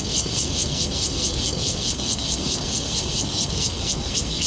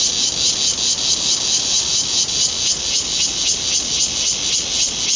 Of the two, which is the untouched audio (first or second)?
second